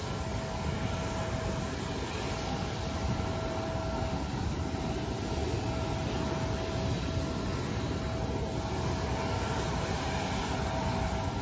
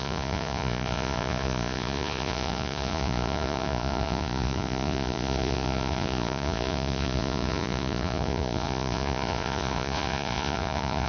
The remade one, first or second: second